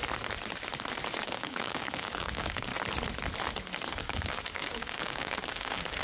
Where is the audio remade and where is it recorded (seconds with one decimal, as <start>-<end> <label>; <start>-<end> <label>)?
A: 0.0-1.2 recorded; 1.2-2.7 remade; 2.7-3.9 recorded; 3.9-6.0 remade